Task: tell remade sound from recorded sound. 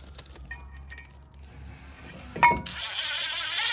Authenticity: recorded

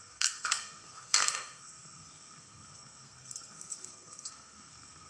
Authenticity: remade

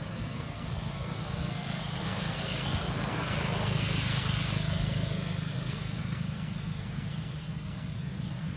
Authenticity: remade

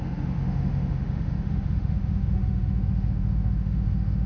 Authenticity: remade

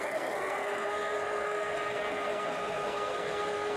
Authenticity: remade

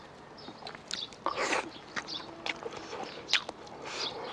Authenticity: recorded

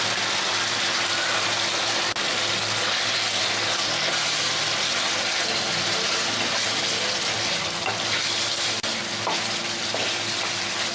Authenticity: recorded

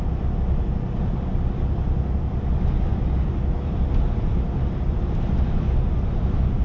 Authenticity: recorded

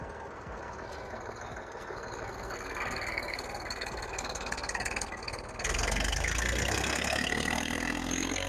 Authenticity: remade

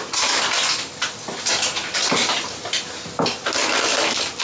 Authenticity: recorded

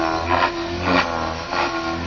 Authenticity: recorded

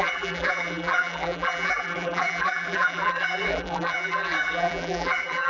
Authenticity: remade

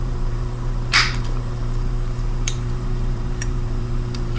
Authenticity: remade